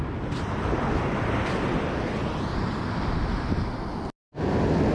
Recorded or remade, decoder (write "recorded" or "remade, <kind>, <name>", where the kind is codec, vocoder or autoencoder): recorded